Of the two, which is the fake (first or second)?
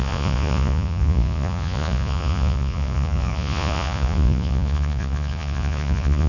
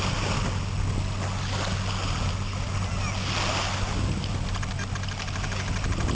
first